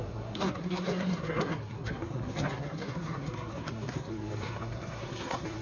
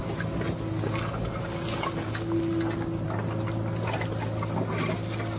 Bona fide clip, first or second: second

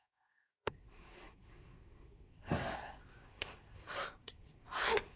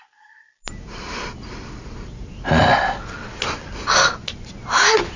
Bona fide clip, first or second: second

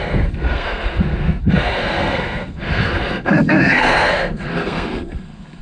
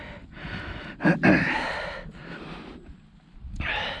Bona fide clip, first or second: second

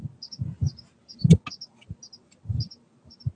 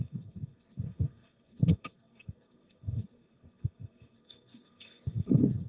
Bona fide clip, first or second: first